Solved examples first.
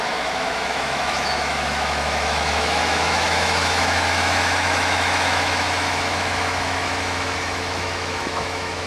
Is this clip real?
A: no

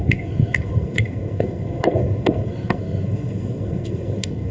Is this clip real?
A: no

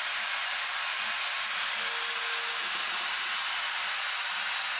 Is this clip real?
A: yes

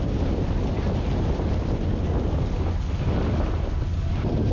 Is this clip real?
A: yes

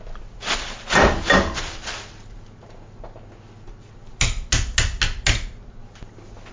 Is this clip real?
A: yes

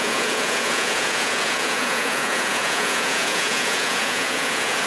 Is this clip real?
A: no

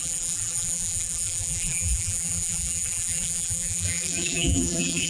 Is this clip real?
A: no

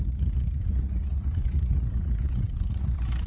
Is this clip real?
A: no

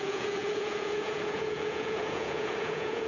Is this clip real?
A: no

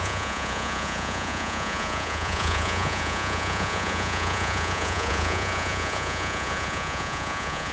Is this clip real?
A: no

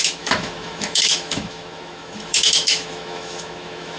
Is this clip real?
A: no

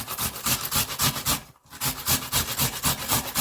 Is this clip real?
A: yes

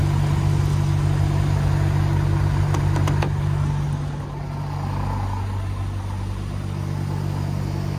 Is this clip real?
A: yes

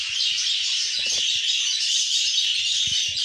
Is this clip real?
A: yes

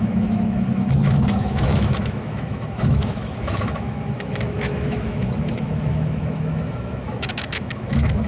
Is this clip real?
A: no